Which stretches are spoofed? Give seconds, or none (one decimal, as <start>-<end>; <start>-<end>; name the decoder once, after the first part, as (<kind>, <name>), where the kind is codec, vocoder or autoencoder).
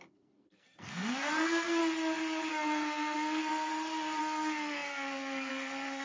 0.0-1.8 (codec, SNAC); 2.5-3.7; 4.2-6.0